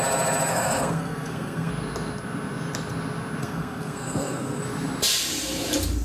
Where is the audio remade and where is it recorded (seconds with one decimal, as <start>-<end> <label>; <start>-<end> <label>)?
0.0-0.5 recorded; 0.5-1.7 remade; 1.7-3.4 recorded; 3.4-4.6 remade; 4.6-6.0 recorded